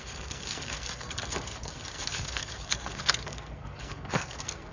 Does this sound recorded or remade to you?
remade